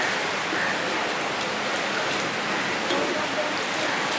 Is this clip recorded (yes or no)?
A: yes